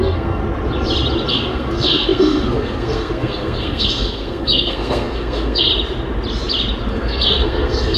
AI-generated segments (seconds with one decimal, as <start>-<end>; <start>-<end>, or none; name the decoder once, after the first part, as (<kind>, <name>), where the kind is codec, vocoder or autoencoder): 0.0-0.4 (codec, SNAC); 1.3-5.7; 6.9-8.0